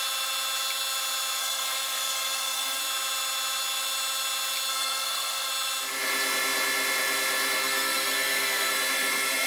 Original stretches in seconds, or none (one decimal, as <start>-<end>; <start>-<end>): 0.0-1.4; 2.8-4.7; 5.5-7.6; 8.7-9.5